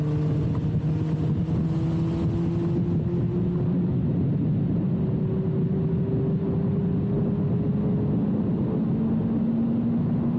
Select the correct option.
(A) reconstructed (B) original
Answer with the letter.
B